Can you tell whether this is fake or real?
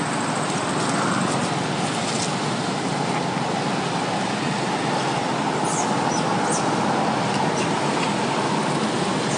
real